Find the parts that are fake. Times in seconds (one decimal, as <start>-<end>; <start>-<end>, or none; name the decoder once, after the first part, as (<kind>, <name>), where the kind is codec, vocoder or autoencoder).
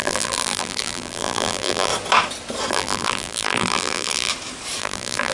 0.0-1.9 (vocoder, BigVGAN v2); 2.7-4.3; 4.8-5.3